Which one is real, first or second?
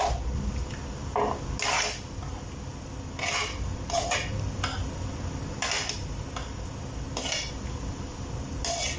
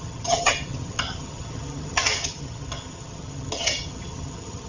first